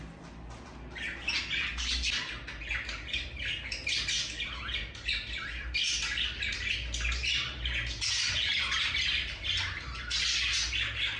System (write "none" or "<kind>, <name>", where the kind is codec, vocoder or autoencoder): none